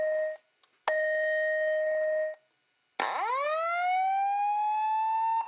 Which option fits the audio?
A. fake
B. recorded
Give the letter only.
B